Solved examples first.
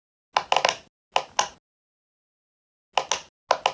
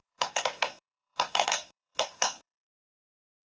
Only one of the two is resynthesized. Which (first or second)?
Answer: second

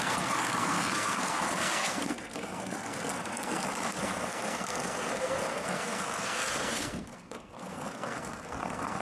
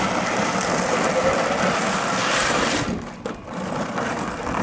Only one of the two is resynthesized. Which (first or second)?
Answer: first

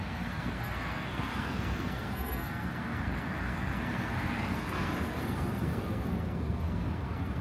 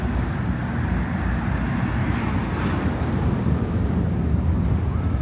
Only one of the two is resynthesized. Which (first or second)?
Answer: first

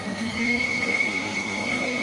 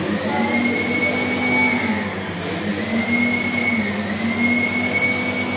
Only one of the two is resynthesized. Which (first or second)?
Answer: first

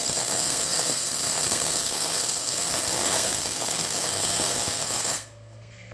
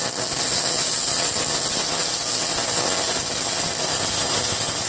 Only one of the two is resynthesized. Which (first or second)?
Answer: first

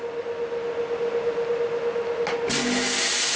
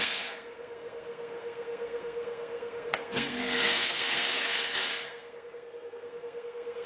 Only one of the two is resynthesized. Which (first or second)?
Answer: second